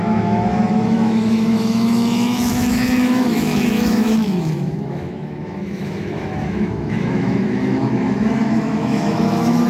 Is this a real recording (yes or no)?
no